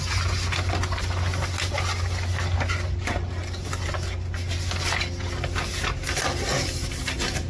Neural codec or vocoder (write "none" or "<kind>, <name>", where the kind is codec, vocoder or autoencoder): none